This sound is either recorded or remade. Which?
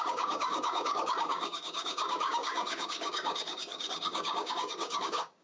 remade